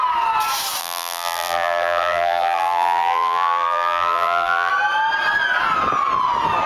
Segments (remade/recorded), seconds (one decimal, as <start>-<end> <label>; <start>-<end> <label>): 0.0-0.8 recorded; 0.8-4.7 remade; 4.7-6.7 recorded

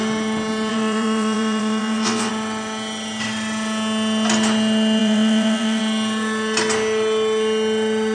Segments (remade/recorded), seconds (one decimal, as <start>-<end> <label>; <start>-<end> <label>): 0.0-0.7 recorded; 0.7-2.3 remade; 2.3-5.0 recorded; 5.0-5.8 remade; 5.8-8.1 recorded

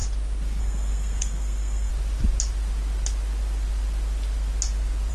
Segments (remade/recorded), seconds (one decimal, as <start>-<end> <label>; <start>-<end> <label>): 0.0-0.6 recorded; 0.6-1.9 remade; 1.9-5.1 recorded

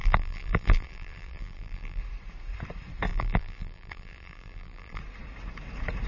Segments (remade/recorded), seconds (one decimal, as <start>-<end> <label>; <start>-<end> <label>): 0.0-2.0 remade; 2.0-3.1 recorded; 3.1-5.0 remade; 5.0-6.1 recorded

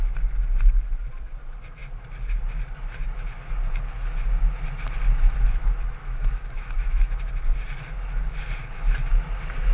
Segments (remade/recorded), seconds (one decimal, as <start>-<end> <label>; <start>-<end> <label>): 0.0-6.0 recorded; 6.0-7.3 remade; 7.3-9.7 recorded

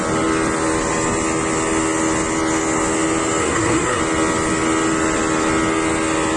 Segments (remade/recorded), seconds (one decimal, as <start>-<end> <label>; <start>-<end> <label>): 0.0-3.4 recorded; 3.4-4.0 remade; 4.0-6.4 recorded

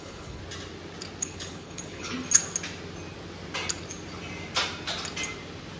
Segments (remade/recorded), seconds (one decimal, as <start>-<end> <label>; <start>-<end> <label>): 0.0-0.4 remade; 0.4-1.2 recorded; 1.2-2.1 remade; 2.1-5.8 recorded